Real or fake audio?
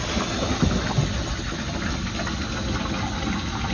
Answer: real